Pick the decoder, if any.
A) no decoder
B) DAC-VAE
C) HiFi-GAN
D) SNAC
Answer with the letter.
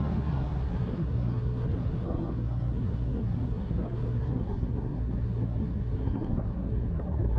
D